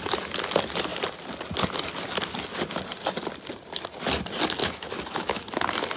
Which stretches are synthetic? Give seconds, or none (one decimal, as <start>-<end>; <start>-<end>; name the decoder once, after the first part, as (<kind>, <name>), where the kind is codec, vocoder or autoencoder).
4.6-5.5 (autoencoder, DAC-VAE)